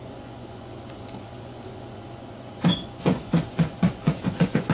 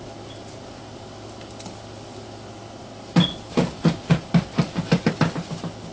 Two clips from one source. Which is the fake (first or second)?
first